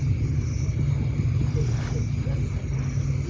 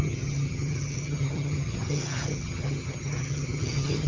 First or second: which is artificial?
second